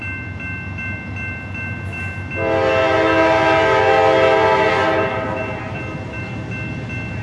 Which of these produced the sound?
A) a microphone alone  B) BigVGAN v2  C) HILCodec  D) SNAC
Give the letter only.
A